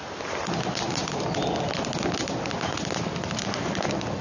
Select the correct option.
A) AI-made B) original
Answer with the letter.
B